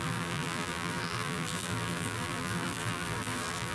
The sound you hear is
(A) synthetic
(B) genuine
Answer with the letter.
A